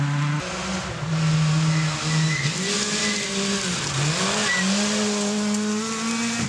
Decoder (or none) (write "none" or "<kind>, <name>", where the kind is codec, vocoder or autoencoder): none